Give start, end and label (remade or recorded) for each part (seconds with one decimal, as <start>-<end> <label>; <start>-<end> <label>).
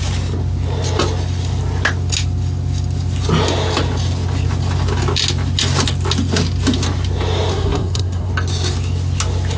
0.0-7.5 recorded; 7.5-8.3 remade; 8.3-9.6 recorded